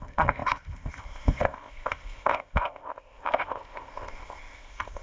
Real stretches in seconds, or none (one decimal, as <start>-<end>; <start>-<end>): none